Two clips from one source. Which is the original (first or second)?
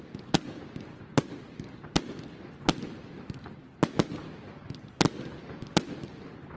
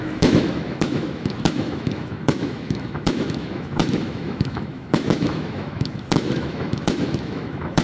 first